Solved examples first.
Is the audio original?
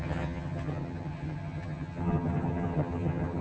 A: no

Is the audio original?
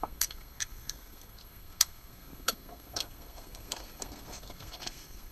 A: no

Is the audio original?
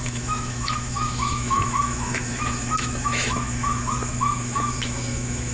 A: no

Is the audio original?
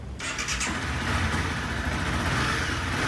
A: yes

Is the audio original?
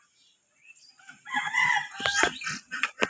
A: yes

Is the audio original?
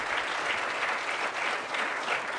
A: yes